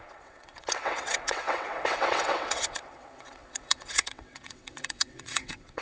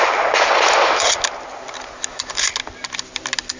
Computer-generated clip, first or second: first